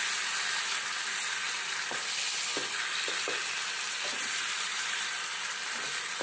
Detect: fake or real real